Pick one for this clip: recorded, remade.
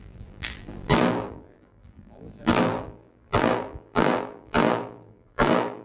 remade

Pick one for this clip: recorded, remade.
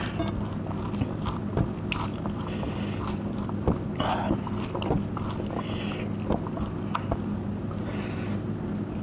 recorded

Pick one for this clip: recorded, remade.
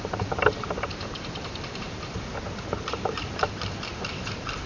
remade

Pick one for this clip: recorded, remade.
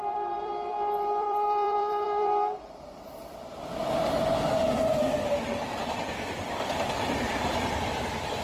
remade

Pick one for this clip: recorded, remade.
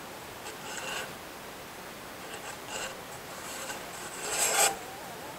remade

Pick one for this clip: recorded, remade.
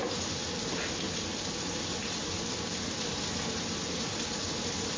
recorded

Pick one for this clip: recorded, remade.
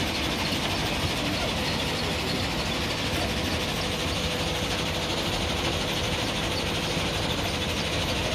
recorded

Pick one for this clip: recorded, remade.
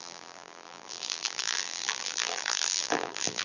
remade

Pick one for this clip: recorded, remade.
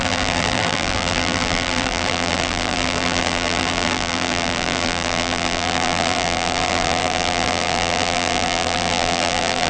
remade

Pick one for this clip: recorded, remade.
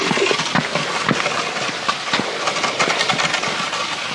recorded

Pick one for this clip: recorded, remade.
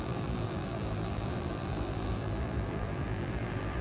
remade